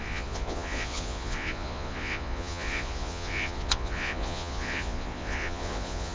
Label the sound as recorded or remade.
remade